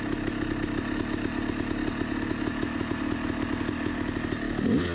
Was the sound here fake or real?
real